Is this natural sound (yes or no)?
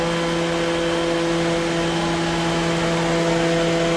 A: yes